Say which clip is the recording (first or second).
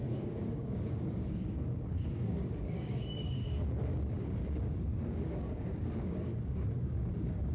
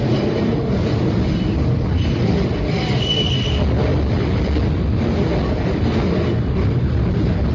second